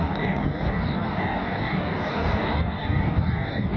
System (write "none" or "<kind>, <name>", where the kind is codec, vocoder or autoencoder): codec, DAC